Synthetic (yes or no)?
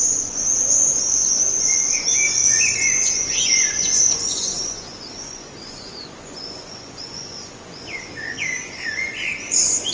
yes